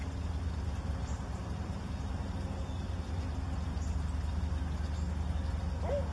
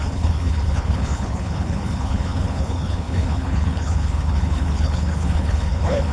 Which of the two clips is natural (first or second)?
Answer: first